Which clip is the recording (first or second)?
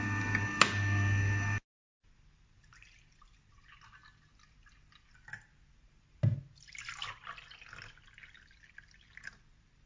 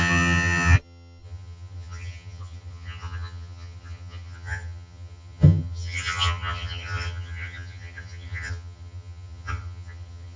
first